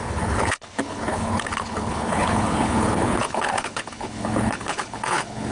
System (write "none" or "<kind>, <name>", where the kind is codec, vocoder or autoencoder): codec, HILCodec